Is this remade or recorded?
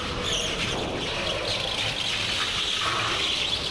recorded